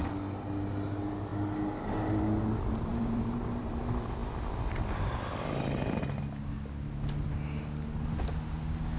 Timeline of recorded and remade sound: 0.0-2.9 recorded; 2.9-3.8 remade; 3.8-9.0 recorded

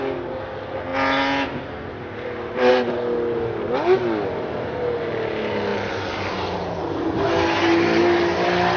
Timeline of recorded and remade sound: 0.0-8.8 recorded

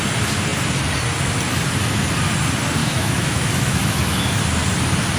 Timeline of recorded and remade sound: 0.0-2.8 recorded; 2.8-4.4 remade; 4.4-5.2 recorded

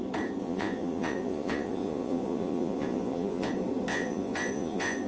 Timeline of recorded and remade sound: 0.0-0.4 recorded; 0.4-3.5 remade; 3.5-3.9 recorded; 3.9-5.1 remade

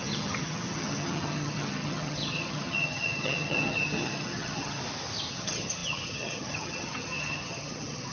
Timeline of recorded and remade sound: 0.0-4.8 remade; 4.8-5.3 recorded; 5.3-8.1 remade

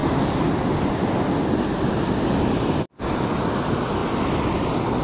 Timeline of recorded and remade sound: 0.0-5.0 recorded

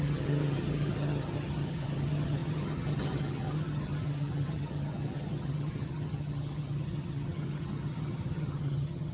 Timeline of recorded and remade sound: 0.0-9.1 remade